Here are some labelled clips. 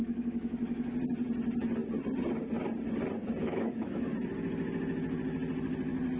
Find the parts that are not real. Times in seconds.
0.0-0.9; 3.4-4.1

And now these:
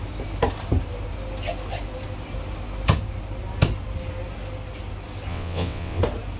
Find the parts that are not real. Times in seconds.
5.3-6.0